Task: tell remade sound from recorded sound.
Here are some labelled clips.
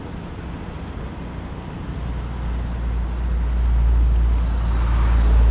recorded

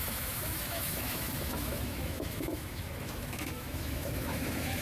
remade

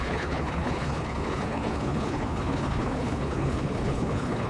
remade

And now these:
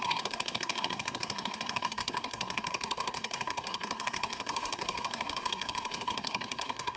remade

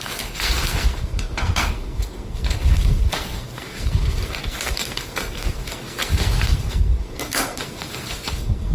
remade